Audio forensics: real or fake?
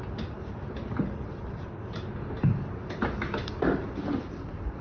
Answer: real